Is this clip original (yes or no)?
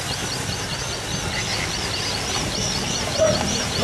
yes